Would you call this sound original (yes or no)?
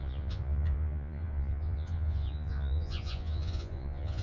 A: no